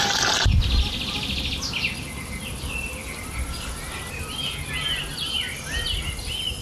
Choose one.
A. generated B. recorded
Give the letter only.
B